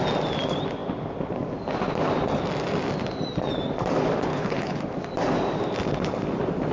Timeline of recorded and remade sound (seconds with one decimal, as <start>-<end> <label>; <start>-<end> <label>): 0.0-4.3 recorded; 4.3-4.8 remade; 4.8-6.7 recorded